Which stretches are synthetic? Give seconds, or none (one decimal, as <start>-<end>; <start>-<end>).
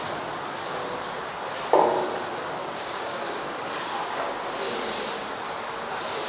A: 2.6-4.3